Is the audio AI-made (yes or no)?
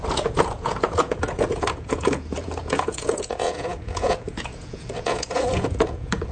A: yes